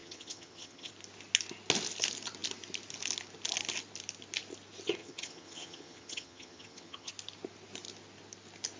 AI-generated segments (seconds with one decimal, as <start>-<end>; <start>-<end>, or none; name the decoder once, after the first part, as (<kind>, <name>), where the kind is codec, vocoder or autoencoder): 0.0-0.9 (vocoder, HiFi-GAN); 5.0-7.1